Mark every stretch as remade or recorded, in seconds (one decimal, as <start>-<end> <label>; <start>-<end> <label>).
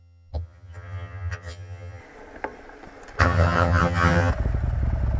0.0-2.0 remade; 2.0-3.2 recorded; 3.2-4.3 remade; 4.3-5.2 recorded